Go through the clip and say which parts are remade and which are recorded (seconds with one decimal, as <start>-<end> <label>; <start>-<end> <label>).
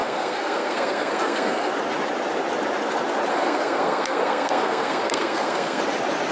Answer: 0.0-1.7 remade; 1.7-3.3 recorded; 3.3-5.8 remade; 5.8-6.3 recorded